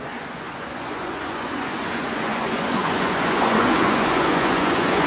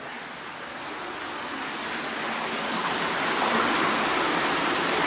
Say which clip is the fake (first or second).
first